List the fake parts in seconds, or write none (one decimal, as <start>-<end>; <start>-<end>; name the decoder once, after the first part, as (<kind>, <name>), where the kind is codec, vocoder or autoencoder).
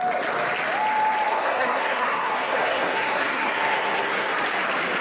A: 1.3-4.3 (codec, SNAC)